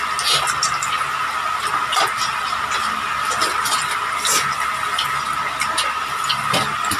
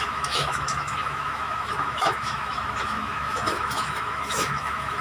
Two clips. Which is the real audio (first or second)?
first